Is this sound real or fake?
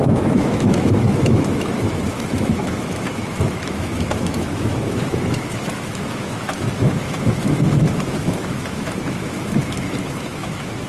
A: fake